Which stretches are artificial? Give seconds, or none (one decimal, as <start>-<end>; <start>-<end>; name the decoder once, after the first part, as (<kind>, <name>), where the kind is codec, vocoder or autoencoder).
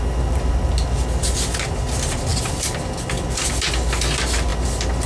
none